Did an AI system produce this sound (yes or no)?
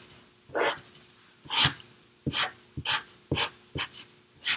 no